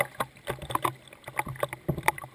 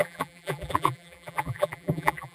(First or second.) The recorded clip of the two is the first